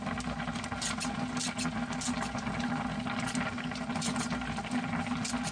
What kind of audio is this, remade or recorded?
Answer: recorded